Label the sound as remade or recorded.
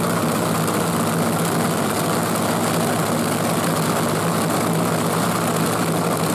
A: recorded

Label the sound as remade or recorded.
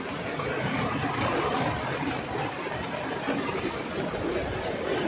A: recorded